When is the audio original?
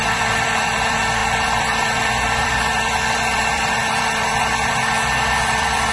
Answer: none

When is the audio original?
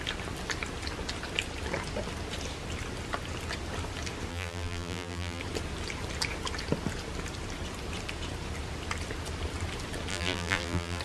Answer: 0.0-4.3; 5.4-10.1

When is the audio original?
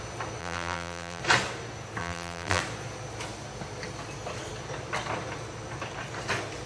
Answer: 0.0-0.4; 1.2-2.0; 2.6-6.7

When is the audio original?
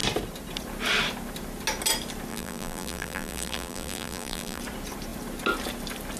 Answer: 0.0-2.3; 4.6-6.2